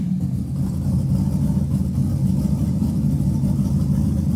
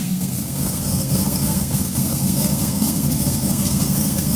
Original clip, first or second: first